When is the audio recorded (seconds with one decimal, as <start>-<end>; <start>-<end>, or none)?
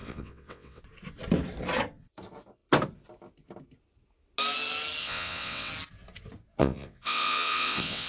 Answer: 0.8-5.0; 5.7-6.6